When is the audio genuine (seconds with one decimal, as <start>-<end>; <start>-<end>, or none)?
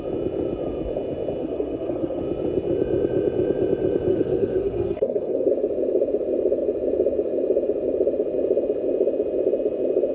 0.0-1.4; 2.2-4.1; 5.5-10.1